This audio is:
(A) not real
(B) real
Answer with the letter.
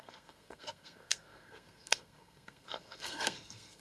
A